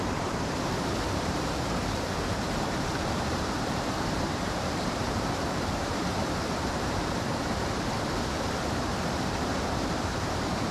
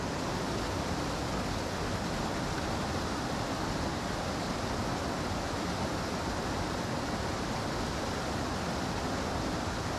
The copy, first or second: first